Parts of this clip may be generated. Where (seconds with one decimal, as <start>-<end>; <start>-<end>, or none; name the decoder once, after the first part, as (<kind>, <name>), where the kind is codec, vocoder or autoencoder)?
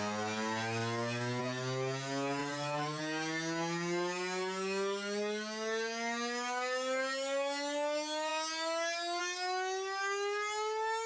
2.4-3.0 (vocoder, BigVGAN v2)